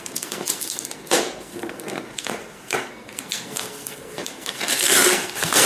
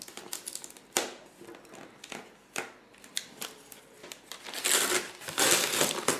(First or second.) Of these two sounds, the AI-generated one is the first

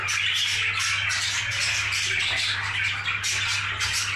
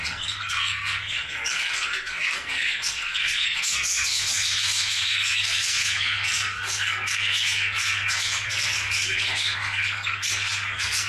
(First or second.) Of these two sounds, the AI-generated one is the second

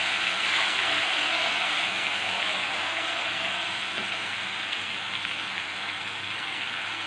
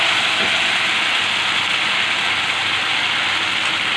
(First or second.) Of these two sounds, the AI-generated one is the first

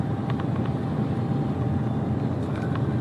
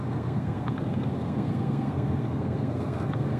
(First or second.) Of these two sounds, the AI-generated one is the second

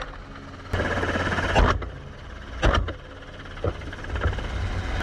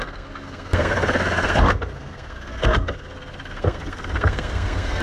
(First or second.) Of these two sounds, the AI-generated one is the second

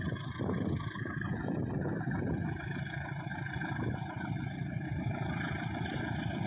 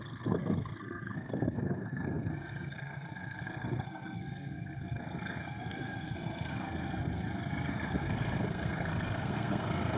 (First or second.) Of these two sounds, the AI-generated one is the second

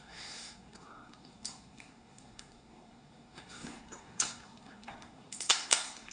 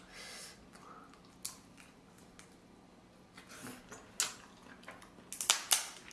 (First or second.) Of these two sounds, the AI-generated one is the first